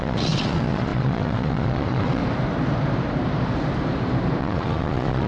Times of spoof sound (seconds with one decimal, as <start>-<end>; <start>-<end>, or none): 0.0-2.2; 4.4-5.3